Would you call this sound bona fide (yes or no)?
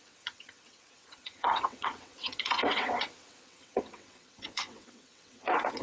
no